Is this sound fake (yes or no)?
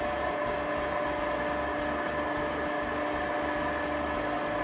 no